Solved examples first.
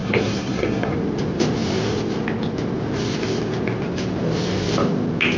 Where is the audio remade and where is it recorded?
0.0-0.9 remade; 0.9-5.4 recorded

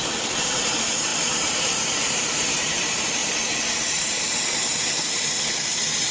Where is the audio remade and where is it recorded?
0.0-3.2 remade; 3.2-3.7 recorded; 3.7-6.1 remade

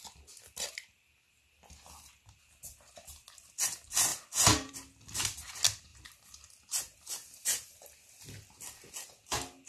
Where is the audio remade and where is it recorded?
0.0-9.7 recorded

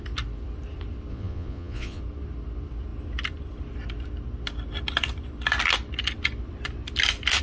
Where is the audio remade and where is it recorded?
0.0-1.1 recorded; 1.1-2.0 remade; 2.0-7.4 recorded